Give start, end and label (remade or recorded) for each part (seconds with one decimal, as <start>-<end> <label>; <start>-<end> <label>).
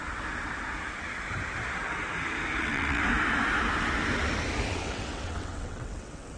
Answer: 0.0-2.6 recorded; 2.6-3.0 remade; 3.0-4.7 recorded; 4.7-6.4 remade